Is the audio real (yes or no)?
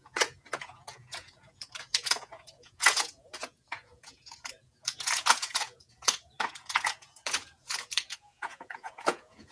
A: no